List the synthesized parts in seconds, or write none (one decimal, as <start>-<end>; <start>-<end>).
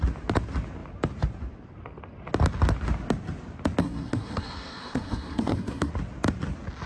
3.8-5.9